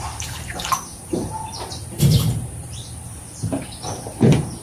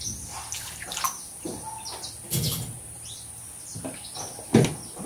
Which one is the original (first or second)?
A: second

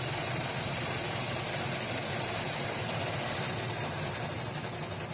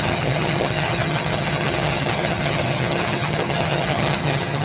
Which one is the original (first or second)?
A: first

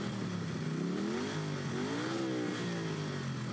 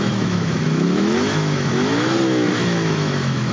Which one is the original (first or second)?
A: first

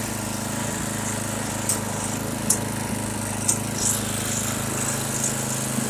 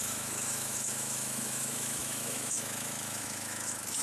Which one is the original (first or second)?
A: first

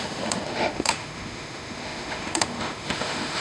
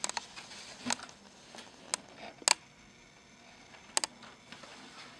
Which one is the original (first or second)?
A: second